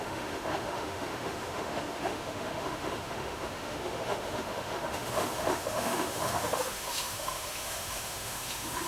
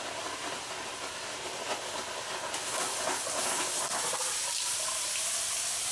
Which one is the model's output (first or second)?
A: first